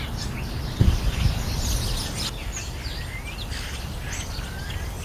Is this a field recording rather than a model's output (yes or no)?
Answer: yes